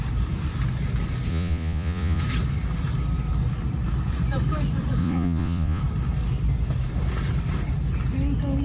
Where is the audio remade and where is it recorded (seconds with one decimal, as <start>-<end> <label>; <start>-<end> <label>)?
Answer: 0.0-1.3 recorded; 1.3-2.2 remade; 2.2-5.0 recorded; 5.0-5.8 remade; 5.8-8.6 recorded